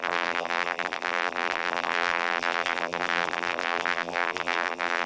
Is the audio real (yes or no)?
no